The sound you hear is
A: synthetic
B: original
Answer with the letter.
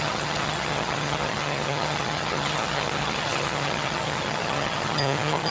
A